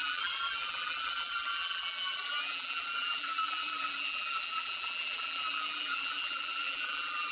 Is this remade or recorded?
remade